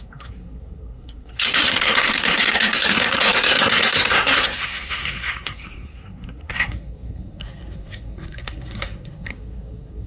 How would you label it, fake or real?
fake